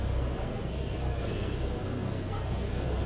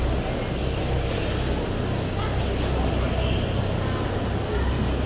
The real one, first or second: second